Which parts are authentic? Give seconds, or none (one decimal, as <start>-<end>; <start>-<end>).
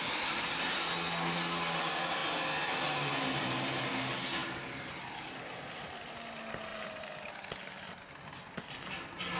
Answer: 0.0-4.4; 5.3-9.4